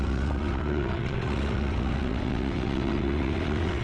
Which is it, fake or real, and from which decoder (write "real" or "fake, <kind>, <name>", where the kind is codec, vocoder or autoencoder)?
fake, vocoder, WaveNeXt